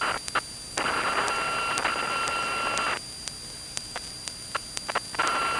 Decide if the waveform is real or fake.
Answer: real